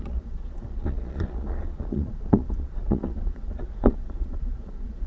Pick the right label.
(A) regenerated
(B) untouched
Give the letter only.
A